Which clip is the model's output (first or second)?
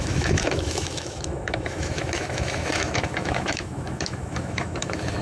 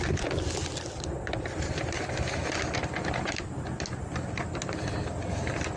first